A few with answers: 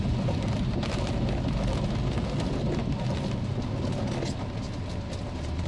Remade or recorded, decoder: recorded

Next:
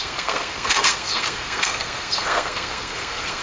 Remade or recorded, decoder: remade, codec, SNAC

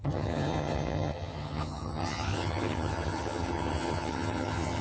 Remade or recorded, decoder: remade, vocoder, HiFi-GAN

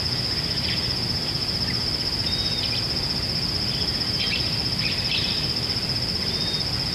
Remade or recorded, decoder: recorded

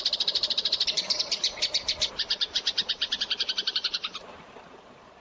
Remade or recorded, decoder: remade, vocoder, BigVGAN v2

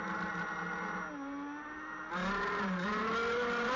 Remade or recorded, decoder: recorded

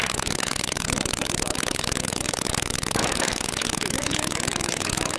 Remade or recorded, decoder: remade, autoencoder, DAC-VAE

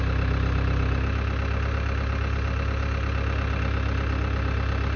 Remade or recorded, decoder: recorded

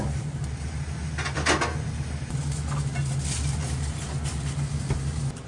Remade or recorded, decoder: recorded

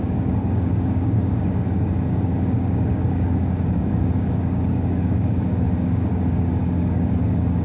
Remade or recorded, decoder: remade, codec, DAC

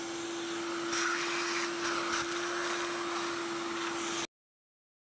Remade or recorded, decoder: recorded